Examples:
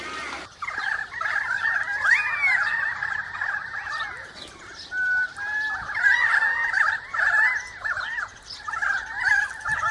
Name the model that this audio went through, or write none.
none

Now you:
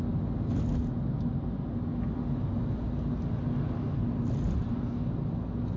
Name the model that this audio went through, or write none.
none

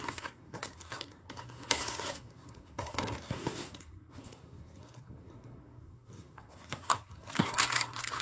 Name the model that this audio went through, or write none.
codec, SNAC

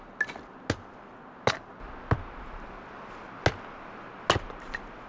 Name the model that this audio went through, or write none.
none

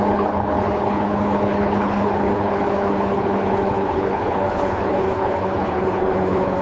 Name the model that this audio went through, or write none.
codec, HILCodec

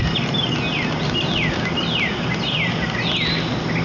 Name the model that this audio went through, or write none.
none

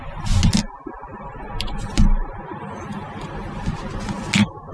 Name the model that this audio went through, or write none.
none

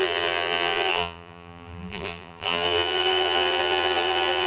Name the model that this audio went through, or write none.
vocoder, BigVGAN v2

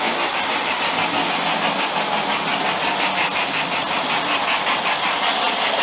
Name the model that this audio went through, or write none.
none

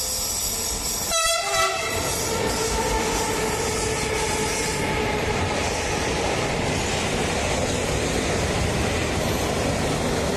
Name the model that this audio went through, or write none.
none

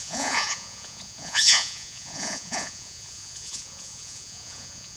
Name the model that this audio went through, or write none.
vocoder, Vocos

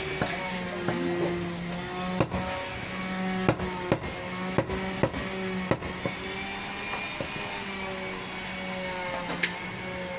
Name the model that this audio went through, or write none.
none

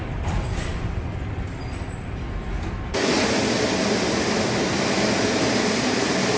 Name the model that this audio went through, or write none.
none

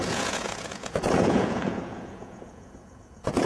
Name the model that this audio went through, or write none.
vocoder, Vocos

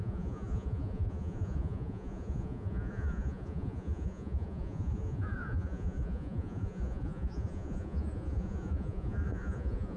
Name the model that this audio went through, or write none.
vocoder, Vocos